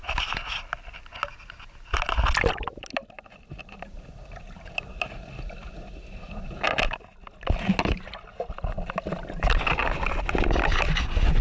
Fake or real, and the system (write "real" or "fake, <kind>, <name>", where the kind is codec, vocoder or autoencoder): real